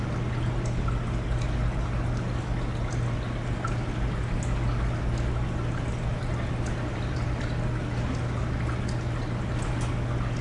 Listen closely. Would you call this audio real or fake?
real